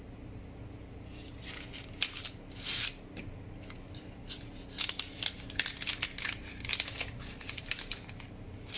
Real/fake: real